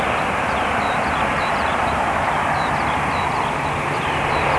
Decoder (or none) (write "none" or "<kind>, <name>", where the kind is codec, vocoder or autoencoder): vocoder, BigVGAN v2